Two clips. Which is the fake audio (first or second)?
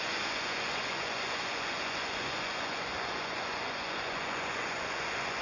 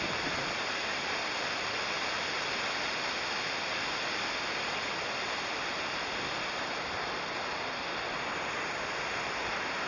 first